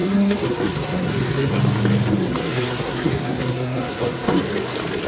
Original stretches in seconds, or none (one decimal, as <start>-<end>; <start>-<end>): 1.5-2.2; 4.4-5.1